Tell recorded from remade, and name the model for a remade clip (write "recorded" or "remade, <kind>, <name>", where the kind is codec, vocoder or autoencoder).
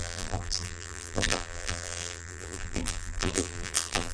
remade, vocoder, BigVGAN v2